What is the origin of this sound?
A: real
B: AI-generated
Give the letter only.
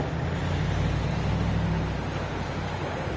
A